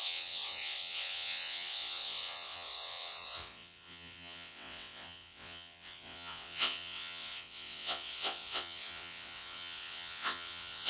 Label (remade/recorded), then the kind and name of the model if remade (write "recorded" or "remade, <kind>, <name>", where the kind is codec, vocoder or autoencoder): remade, vocoder, WaveNeXt